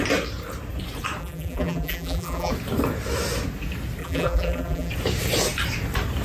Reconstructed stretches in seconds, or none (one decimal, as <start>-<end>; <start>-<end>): 1.2-2.5; 4.0-4.9